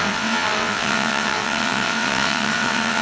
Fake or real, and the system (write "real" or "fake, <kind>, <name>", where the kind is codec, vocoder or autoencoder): fake, vocoder, WaveNeXt